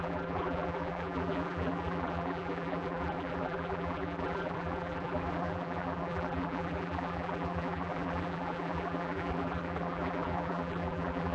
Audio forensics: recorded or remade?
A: remade